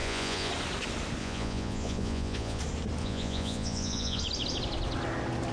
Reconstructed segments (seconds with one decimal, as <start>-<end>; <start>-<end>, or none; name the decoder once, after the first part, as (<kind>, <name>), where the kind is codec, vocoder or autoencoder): 0.0-0.5 (vocoder, Vocos); 1.2-2.6; 3.0-4.2